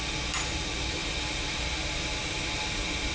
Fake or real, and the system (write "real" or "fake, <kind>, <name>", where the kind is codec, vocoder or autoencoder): real